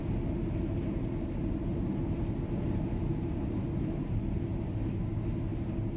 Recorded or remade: recorded